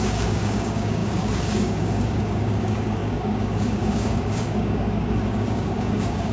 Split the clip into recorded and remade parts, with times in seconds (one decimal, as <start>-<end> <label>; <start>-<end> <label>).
0.0-6.3 remade